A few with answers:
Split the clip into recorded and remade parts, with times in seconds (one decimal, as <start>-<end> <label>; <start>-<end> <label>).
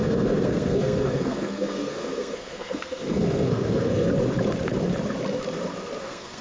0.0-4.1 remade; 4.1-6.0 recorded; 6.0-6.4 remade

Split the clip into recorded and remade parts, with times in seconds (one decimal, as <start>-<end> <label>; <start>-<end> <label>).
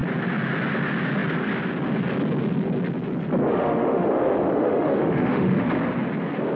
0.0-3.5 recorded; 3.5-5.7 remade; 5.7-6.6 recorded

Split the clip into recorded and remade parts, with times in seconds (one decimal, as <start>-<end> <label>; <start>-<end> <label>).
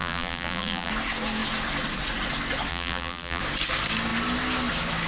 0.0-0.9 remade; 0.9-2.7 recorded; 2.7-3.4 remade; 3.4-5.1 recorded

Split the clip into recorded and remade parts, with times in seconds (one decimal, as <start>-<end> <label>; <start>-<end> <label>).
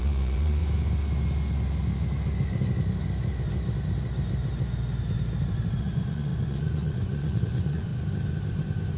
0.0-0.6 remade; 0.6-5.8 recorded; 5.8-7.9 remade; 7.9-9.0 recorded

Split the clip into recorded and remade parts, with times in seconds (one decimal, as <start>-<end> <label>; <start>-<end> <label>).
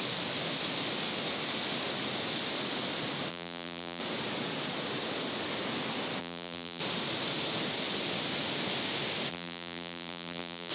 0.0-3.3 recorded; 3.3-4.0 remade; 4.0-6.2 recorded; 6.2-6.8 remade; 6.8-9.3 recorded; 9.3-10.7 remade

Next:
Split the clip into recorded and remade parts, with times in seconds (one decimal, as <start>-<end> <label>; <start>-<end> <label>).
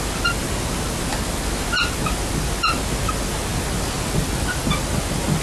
0.0-5.4 recorded